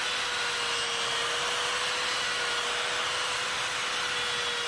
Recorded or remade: recorded